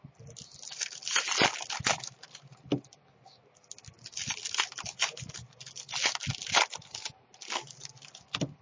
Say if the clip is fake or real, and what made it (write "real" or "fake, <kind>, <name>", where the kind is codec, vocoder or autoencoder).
real